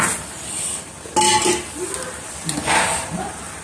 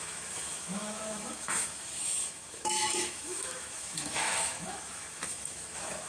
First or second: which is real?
first